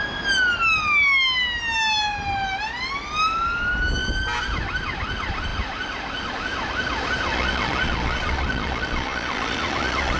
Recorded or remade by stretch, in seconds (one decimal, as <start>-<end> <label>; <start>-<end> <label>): 0.0-7.3 recorded; 7.3-10.2 remade